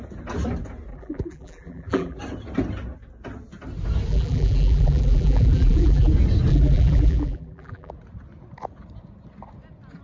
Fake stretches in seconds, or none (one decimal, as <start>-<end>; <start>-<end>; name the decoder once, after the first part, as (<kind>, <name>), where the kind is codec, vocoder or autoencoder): 0.9-2.2 (vocoder, BigVGAN v2); 4.1-6.1; 6.5-7.9